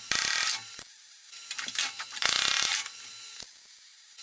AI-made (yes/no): no